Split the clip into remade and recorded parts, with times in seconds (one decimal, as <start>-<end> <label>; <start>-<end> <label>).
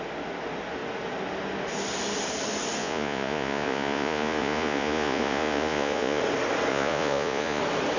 0.0-2.8 recorded; 2.8-6.2 remade; 6.2-6.7 recorded; 6.7-7.6 remade; 7.6-8.0 recorded